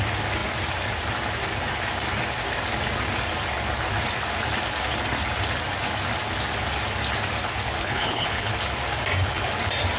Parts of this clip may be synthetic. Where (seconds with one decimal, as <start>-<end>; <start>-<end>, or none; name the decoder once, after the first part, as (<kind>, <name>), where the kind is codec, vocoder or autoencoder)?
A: 7.8-8.5 (codec, HILCodec)